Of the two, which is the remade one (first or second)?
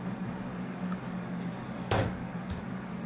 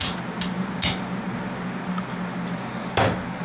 first